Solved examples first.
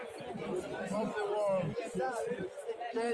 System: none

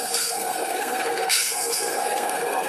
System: codec, SNAC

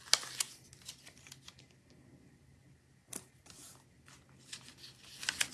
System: none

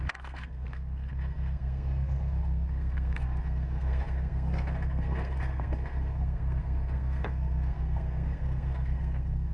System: codec, SNAC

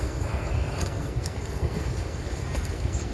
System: codec, SNAC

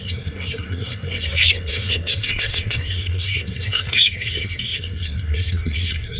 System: codec, SNAC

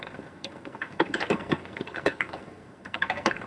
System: codec, SNAC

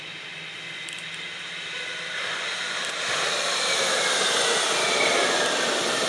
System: none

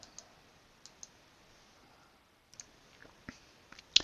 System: none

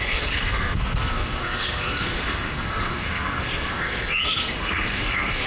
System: codec, SNAC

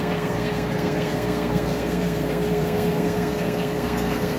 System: codec, SNAC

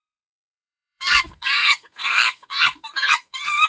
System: codec, SNAC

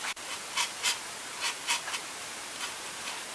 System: none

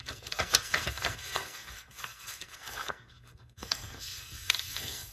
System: codec, SNAC